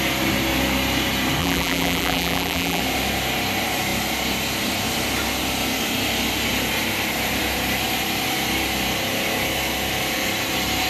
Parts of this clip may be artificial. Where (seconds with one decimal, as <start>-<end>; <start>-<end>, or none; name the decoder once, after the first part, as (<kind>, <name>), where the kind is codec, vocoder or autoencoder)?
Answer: 1.4-2.8 (vocoder, BigVGAN v2)